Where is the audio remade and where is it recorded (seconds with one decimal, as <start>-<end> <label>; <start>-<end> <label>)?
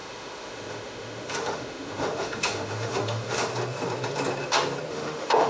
0.0-3.5 remade; 3.5-4.9 recorded; 4.9-5.5 remade